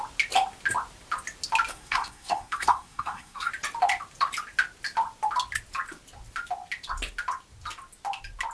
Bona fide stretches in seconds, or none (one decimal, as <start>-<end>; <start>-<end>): 0.0-1.7; 3.5-8.5